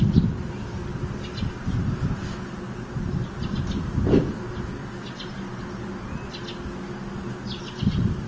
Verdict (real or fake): real